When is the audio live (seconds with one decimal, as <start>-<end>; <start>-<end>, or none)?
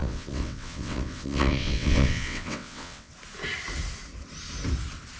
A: 3.1-5.2